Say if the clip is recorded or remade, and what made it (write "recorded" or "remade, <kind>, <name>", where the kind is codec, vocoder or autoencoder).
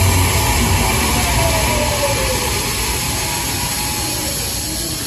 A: recorded